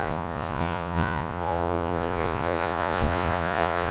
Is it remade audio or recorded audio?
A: remade